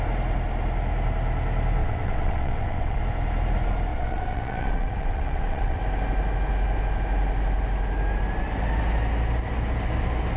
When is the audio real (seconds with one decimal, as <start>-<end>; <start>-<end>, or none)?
0.0-1.8; 3.0-3.9; 5.8-10.4